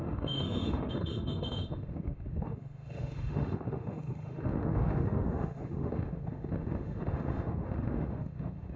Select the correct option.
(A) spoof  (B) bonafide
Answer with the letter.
A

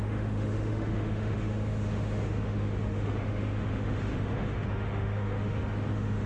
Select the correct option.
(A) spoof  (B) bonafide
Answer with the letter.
A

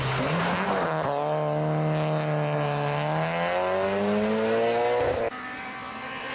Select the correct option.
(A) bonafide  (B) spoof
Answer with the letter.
A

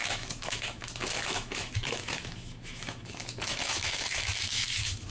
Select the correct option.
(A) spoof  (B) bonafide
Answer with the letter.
A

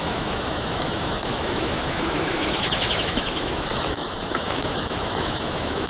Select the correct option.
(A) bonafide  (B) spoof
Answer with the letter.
B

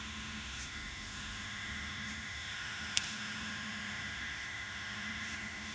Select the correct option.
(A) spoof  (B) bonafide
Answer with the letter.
A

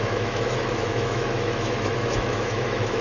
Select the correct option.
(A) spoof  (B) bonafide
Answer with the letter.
A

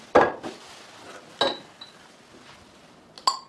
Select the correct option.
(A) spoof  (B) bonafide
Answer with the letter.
B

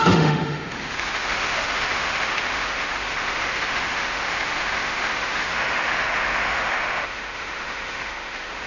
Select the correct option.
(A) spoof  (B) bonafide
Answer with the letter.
A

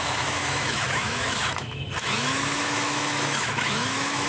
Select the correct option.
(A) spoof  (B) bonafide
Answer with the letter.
A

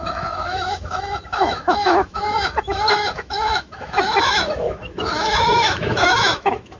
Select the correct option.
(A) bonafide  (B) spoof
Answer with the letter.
B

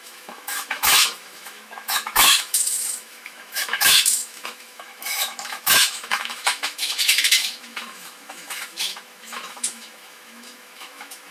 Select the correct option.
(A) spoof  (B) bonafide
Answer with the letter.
A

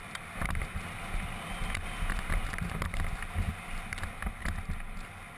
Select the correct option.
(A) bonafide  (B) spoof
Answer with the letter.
A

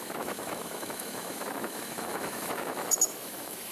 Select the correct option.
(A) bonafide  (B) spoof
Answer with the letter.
B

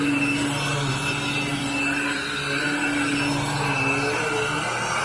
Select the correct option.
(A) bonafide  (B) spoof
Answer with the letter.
A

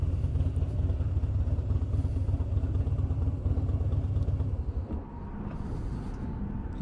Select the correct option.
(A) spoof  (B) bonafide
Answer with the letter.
B